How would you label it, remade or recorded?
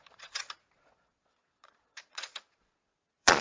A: remade